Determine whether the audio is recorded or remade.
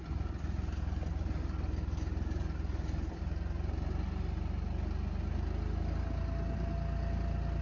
recorded